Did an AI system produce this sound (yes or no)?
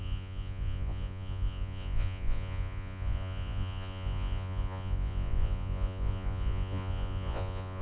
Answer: yes